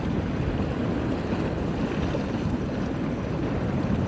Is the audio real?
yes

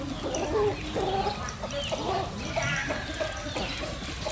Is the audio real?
yes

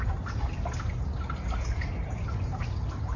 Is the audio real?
yes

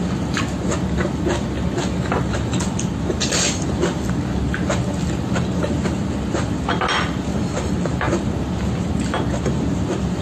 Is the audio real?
yes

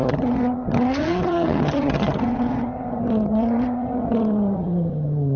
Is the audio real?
no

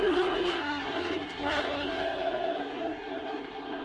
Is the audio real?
no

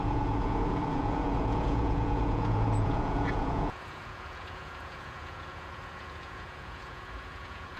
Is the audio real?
no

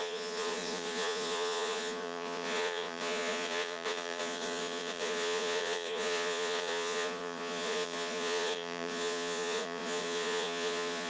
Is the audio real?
no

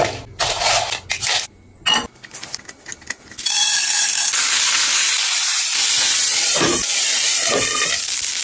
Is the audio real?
yes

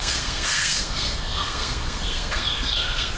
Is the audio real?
no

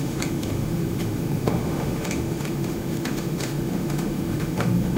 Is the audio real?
no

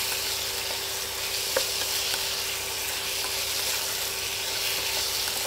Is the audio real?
yes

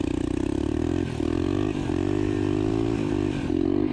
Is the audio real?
yes